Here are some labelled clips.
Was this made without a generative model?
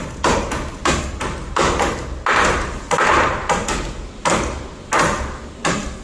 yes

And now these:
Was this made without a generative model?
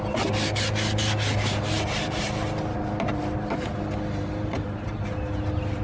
yes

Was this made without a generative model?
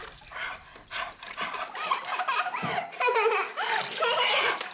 yes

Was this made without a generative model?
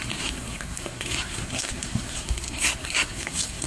no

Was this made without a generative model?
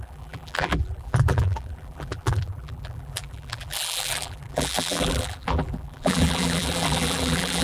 no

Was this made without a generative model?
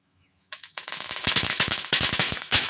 no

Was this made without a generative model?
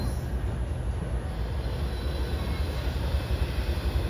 yes